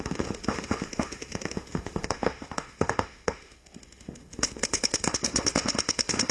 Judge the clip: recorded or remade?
remade